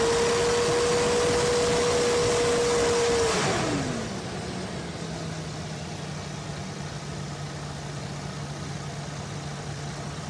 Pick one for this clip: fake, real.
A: real